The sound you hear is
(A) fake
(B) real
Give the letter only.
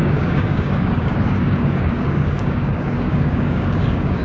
A